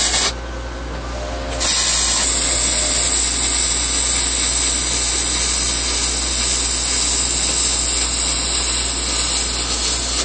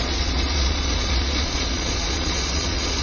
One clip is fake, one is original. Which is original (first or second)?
first